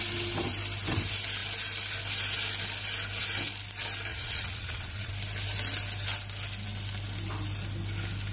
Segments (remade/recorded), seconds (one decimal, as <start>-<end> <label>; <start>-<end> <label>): 0.0-4.1 recorded; 4.1-5.1 remade; 5.1-8.3 recorded

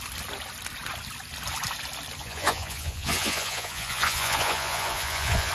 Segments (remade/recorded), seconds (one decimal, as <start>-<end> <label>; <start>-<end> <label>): 0.0-2.2 recorded; 2.2-5.5 remade

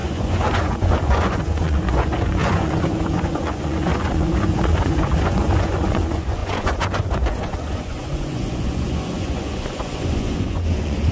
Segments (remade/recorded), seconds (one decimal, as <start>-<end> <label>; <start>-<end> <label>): 0.0-11.1 remade

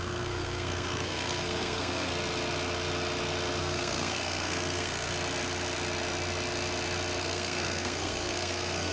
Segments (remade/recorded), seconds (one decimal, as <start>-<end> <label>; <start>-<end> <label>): 0.0-2.1 remade; 2.1-3.6 recorded; 3.6-5.1 remade; 5.1-7.2 recorded; 7.2-8.9 remade

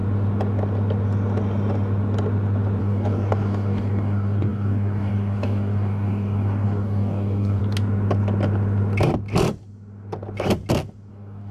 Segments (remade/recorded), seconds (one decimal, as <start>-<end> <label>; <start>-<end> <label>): 0.0-2.8 recorded; 2.8-7.6 remade; 7.6-11.1 recorded; 11.1-11.5 remade

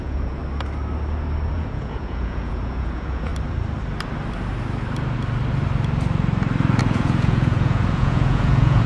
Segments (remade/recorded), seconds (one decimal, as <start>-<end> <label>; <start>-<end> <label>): 0.0-0.4 remade; 0.4-1.5 recorded; 1.5-3.3 remade; 3.3-6.8 recorded; 6.8-8.9 remade

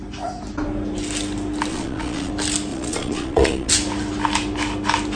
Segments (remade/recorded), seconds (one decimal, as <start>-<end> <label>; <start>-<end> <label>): 0.0-1.7 recorded; 1.7-2.3 remade; 2.3-2.7 recorded; 2.7-3.7 remade; 3.7-5.2 recorded